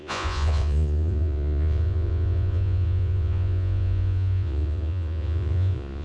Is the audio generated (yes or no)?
yes